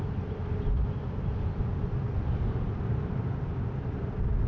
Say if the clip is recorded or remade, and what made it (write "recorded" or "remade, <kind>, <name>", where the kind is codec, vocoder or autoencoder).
recorded